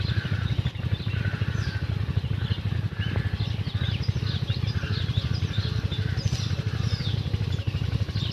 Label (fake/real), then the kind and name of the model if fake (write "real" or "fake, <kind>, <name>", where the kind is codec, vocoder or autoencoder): real